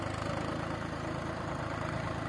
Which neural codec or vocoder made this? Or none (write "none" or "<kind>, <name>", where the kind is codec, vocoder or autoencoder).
none